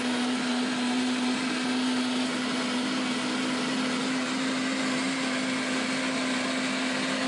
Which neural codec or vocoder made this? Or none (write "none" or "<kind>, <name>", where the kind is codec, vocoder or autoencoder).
none